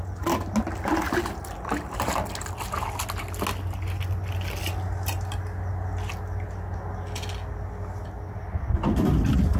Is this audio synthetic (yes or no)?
no